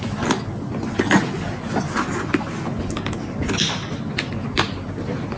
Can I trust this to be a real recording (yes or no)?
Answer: yes